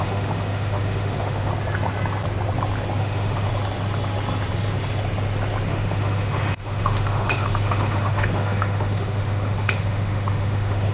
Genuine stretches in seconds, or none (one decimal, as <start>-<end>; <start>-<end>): 1.5-3.0; 3.5-5.7